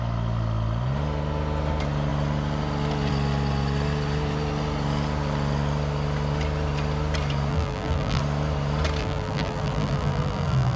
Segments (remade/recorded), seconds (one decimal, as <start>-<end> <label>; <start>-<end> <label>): 0.0-7.5 recorded; 7.5-8.2 remade; 8.2-9.0 recorded; 9.0-10.8 remade